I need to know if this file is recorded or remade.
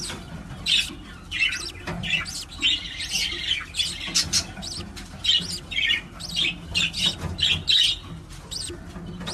recorded